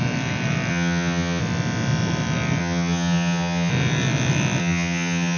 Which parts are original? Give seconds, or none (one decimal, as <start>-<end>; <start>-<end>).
0.0-0.7; 1.4-2.6; 3.7-4.6